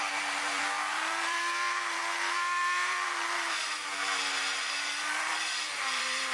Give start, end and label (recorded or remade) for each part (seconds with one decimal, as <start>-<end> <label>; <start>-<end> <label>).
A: 0.0-6.3 remade